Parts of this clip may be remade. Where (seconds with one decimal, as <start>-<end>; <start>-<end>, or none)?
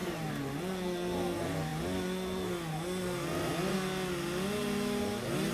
none